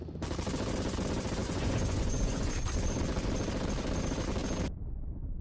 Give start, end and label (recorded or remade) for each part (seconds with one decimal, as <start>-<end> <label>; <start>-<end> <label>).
0.0-1.4 recorded; 1.4-2.5 remade; 2.5-5.4 recorded